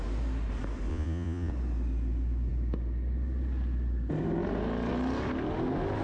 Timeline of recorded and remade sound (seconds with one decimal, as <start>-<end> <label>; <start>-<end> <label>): 0.0-0.9 recorded; 0.9-1.5 remade; 1.5-6.0 recorded